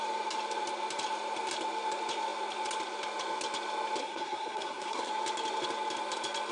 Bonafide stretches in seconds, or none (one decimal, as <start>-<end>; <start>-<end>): 0.0-4.0; 5.1-6.5